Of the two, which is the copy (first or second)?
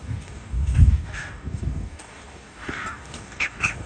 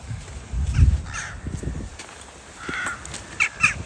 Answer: first